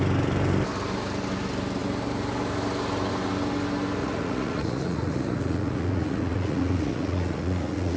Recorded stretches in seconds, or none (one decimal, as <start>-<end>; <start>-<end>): 0.0-4.0